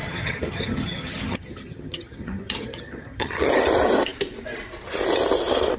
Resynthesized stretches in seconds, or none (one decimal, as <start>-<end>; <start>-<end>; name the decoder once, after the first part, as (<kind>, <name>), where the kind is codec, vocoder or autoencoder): 0.0-3.5 (vocoder, HiFi-GAN)